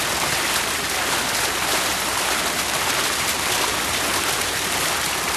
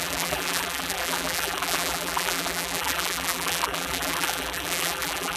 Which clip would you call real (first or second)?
first